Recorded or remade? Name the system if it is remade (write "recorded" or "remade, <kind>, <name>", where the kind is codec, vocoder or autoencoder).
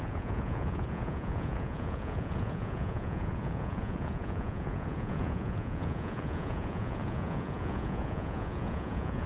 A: remade, vocoder, Vocos